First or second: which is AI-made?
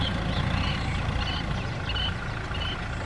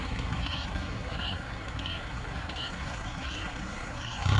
second